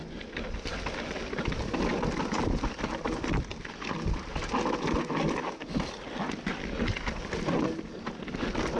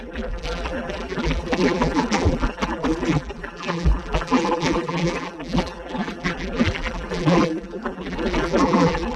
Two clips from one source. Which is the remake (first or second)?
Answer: second